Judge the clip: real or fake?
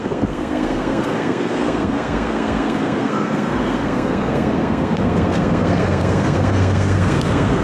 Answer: fake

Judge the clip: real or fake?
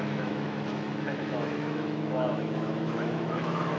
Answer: fake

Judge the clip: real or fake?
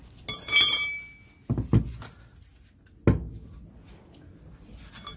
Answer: real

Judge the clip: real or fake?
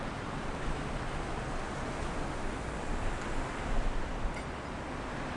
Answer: real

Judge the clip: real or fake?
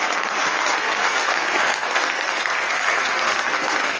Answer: fake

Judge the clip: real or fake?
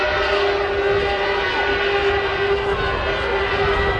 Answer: real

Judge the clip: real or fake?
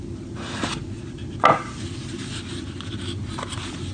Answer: real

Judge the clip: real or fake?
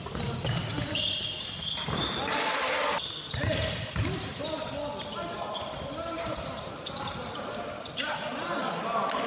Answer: real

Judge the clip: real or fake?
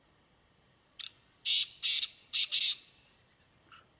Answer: fake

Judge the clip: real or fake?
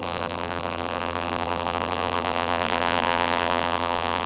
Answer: fake